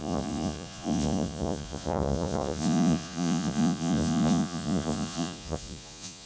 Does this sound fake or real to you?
fake